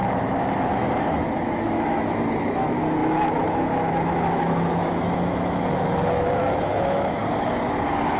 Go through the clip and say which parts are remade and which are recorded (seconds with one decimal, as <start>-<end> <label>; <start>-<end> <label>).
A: 0.0-7.2 remade; 7.2-8.2 recorded